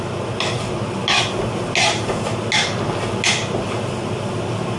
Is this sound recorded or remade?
recorded